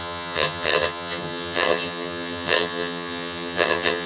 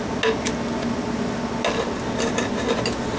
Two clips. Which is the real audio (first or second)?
second